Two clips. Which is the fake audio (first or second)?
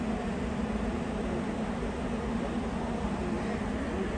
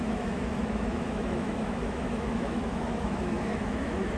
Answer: second